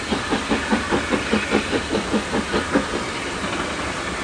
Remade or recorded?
recorded